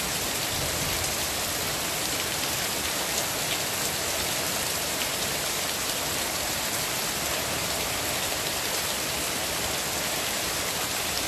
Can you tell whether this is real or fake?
fake